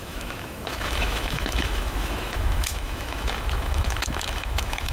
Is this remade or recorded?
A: remade